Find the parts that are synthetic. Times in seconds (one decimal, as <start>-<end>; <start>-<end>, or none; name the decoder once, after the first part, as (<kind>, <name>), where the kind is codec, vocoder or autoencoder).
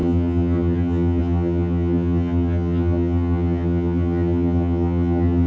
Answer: 0.0-5.5 (vocoder, HiFi-GAN)